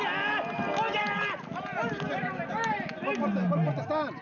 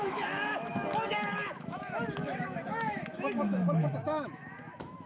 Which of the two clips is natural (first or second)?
first